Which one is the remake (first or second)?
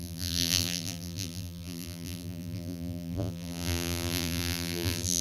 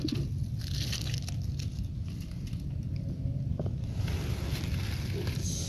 first